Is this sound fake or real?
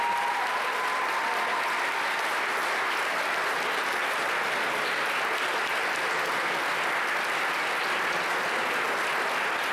real